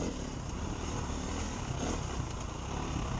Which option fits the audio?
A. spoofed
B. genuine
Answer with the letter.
B